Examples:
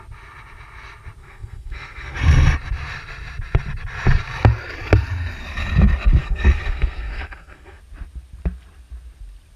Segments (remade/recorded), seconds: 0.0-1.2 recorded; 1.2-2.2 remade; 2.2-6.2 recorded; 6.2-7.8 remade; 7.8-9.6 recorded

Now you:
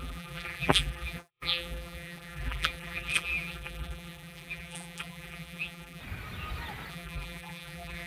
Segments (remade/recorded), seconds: 0.0-6.0 remade; 6.0-6.9 recorded; 6.9-8.1 remade

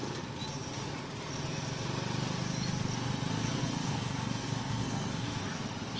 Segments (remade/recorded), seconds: 0.0-3.6 recorded; 3.6-5.4 remade; 5.4-6.0 recorded

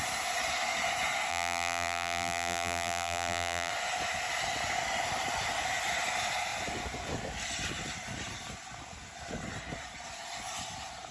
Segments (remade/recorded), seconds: 0.0-1.3 recorded; 1.3-3.7 remade; 3.7-11.1 recorded

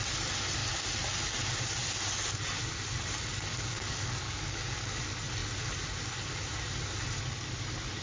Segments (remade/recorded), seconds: 0.0-3.5 recorded; 3.5-5.0 remade; 5.0-8.0 recorded

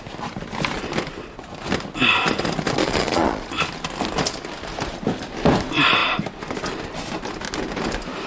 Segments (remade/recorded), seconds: 0.0-2.8 recorded; 2.8-3.5 remade; 3.5-8.3 recorded

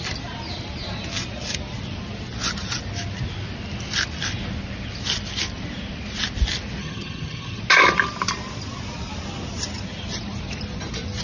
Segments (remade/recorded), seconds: 0.0-6.8 recorded; 6.8-7.6 remade; 7.6-11.2 recorded

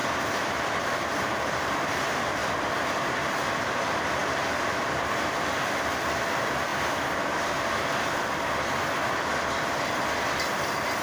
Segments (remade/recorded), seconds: 0.0-0.9 recorded; 0.9-11.0 remade